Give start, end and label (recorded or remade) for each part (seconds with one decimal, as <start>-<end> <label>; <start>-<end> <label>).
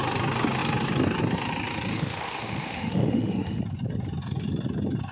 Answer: 0.0-1.9 recorded; 1.9-3.6 remade; 3.6-5.1 recorded